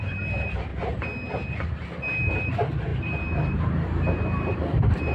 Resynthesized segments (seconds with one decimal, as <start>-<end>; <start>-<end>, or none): 0.0-0.7; 2.3-5.1